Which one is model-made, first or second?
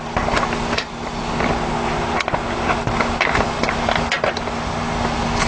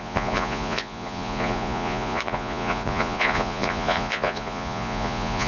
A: second